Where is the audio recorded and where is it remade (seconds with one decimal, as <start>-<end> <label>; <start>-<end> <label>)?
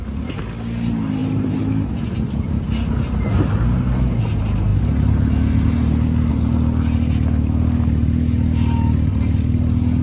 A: 0.0-1.2 recorded; 1.2-1.9 remade; 1.9-10.0 recorded